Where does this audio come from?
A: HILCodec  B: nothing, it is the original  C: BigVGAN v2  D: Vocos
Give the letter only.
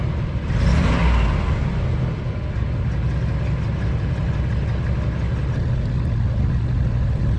B